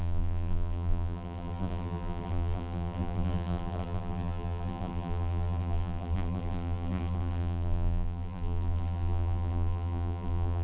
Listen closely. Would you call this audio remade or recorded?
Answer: remade